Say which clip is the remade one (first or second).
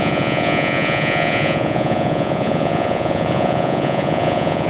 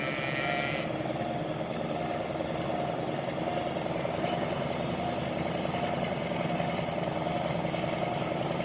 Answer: first